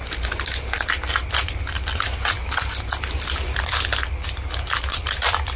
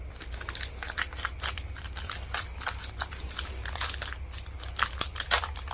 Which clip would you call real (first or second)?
second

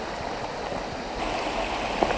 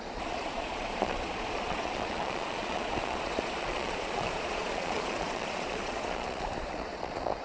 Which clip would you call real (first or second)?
first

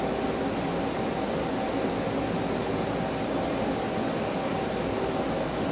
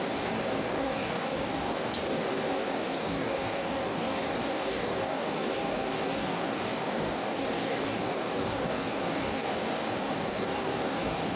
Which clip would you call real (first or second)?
first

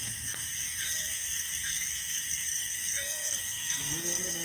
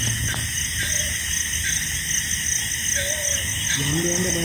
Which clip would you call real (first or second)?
second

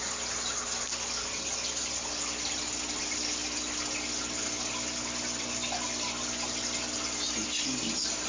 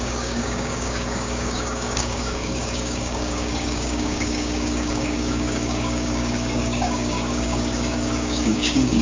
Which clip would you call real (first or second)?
first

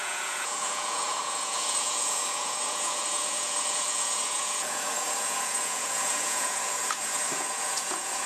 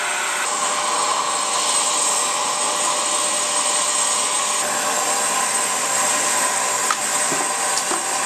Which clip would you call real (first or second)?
second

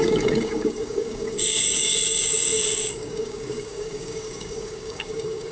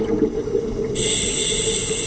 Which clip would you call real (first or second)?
second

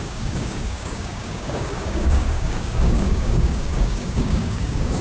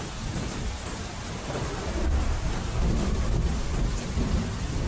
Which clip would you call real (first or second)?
second